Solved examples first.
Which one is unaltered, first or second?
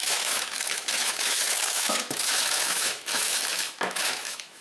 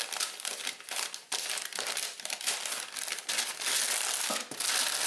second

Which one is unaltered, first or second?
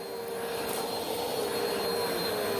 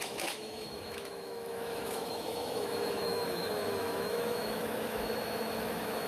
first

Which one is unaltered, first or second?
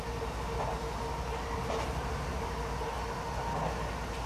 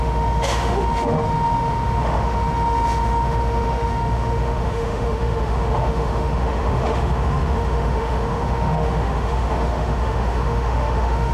first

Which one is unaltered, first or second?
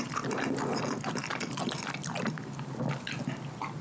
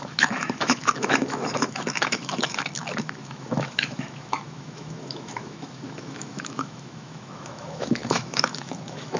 first